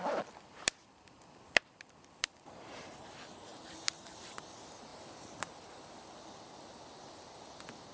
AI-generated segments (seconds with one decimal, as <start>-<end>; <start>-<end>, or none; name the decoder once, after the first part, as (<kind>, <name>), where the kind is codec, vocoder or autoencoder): 0.0-7.9 (vocoder, BigVGAN v2)